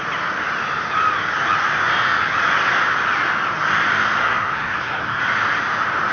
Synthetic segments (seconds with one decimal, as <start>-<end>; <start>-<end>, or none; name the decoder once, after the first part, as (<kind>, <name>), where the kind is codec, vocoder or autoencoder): 4.2-5.2 (codec, SNAC)